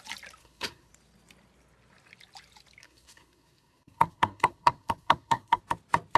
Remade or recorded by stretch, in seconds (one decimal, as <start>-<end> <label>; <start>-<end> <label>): 0.0-0.4 recorded; 0.4-0.9 remade; 0.9-2.8 recorded; 2.8-5.6 remade; 5.6-6.2 recorded